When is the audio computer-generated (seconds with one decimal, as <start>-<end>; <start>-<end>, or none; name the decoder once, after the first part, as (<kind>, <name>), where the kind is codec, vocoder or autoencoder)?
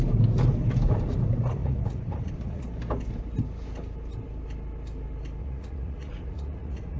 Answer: 1.6-2.6 (vocoder, Vocos); 5.4-7.0